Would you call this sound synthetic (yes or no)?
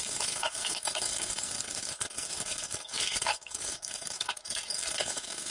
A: yes